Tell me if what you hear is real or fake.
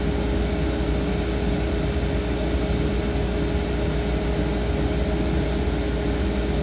real